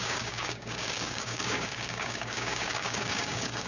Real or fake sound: fake